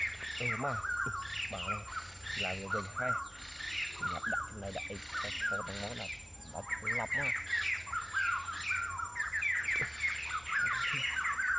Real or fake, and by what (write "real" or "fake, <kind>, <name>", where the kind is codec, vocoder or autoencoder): real